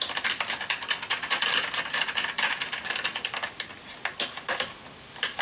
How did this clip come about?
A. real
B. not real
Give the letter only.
A